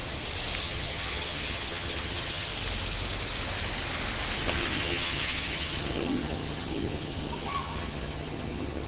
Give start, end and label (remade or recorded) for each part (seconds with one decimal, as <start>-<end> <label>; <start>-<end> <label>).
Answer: 0.0-0.6 recorded; 0.6-2.5 remade; 2.5-4.5 recorded; 4.5-8.9 remade